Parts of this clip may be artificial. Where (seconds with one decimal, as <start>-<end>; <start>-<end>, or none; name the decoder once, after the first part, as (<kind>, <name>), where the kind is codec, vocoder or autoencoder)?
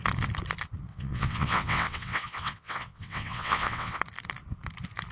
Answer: 0.9-4.0 (vocoder, WaveNeXt)